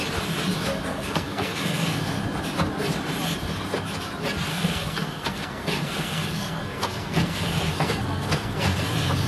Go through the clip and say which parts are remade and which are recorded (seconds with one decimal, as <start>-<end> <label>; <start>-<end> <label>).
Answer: 0.0-0.9 recorded; 0.9-2.0 remade; 2.0-4.5 recorded; 4.5-8.9 remade; 8.9-9.3 recorded